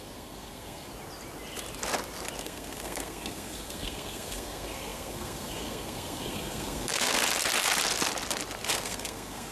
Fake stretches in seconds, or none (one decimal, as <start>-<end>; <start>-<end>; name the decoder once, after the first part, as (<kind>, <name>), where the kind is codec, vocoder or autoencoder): 0.0-0.9 (codec, SNAC); 2.4-7.2; 8.7-9.5